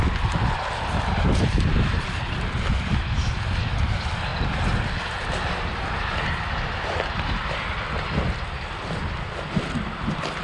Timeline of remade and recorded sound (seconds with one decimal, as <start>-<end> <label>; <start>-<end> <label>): 0.0-10.4 recorded